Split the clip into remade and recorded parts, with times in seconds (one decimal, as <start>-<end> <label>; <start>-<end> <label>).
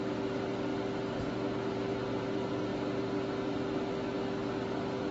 0.0-5.1 recorded